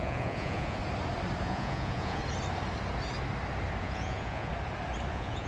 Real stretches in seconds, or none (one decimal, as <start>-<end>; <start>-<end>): 0.8-1.4; 2.2-3.8; 4.5-5.1